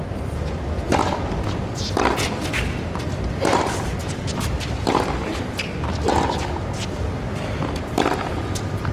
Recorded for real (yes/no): no